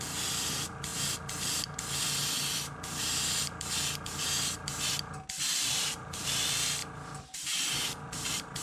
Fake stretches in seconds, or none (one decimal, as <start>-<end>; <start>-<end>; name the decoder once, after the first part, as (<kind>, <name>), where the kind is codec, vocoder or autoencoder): 0.0-0.9 (vocoder, BigVGAN v2); 4.9-6.8; 7.8-8.6